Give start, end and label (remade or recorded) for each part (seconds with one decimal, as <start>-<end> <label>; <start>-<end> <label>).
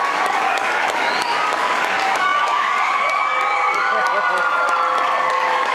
0.0-4.0 remade; 4.0-5.3 recorded; 5.3-5.7 remade